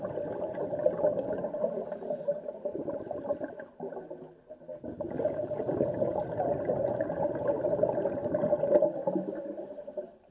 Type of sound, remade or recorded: recorded